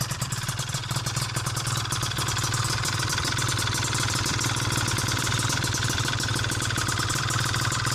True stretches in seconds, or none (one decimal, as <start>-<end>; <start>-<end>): 6.3-7.1